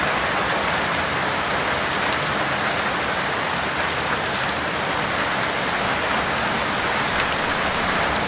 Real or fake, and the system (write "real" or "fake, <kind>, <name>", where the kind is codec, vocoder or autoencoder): real